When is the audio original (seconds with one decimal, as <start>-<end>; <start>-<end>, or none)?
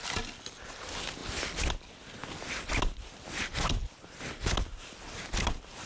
0.0-5.9